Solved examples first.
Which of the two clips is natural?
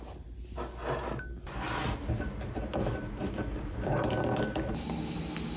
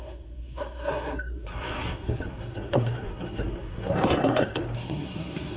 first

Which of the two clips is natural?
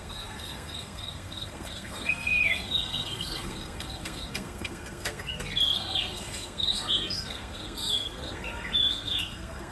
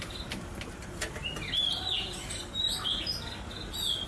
second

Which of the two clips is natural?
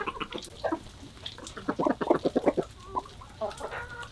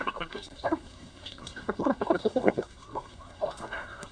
first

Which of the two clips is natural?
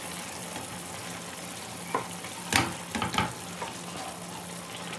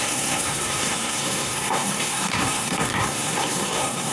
first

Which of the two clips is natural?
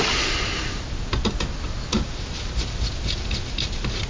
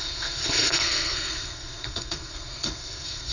first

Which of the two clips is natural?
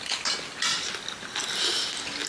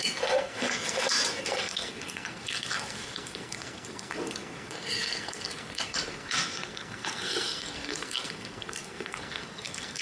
first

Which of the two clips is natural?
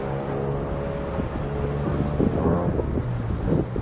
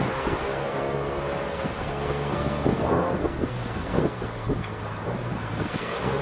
first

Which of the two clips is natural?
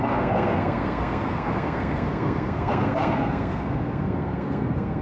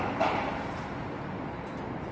second